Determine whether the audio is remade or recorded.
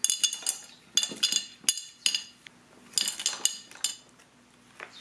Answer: recorded